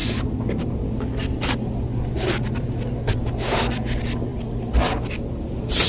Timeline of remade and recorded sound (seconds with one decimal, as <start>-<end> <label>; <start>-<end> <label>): 0.0-5.9 recorded